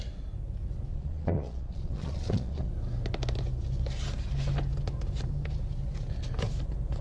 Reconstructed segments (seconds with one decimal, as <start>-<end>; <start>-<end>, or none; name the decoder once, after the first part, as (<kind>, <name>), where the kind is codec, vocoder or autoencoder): 0.9-2.7 (vocoder, Vocos)